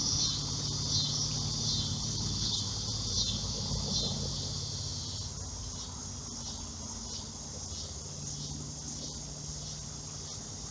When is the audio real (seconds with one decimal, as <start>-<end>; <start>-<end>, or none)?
0.0-1.9; 2.6-10.7